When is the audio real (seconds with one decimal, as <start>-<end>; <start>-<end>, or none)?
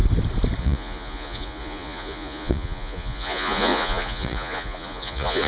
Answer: 0.0-0.6